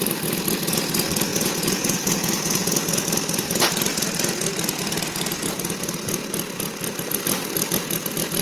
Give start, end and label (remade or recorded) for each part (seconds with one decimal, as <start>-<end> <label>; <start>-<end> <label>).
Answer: 0.0-1.3 recorded; 1.3-3.0 remade; 3.0-8.4 recorded